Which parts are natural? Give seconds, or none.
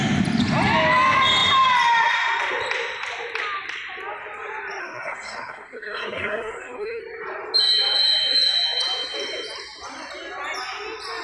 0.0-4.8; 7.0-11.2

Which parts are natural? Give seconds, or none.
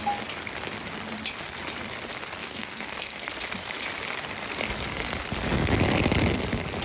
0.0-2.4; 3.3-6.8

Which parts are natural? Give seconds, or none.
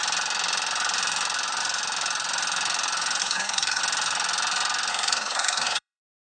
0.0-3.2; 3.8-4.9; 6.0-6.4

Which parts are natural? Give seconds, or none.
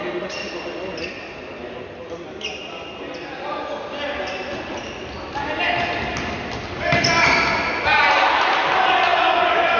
0.0-9.8